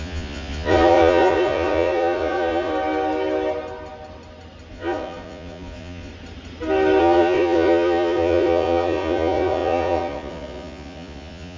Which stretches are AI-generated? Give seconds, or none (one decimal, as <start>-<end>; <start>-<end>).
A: 0.0-2.7; 4.7-6.1; 7.0-11.6

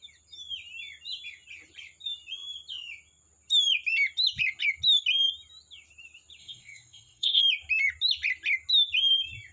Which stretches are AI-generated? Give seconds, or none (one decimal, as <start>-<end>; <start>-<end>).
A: 6.4-7.4